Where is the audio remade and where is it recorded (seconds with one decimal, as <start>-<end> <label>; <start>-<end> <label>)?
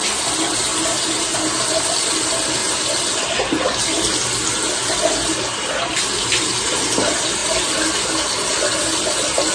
0.0-0.7 recorded; 0.7-1.8 remade; 1.8-2.6 recorded; 2.6-3.1 remade; 3.1-9.5 recorded